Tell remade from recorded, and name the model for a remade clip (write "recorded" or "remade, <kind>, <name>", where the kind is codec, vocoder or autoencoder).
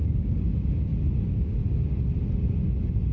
recorded